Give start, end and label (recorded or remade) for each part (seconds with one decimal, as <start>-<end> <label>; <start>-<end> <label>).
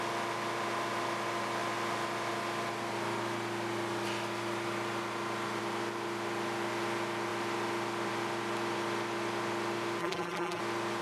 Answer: 0.0-10.0 recorded; 10.0-10.6 remade; 10.6-11.0 recorded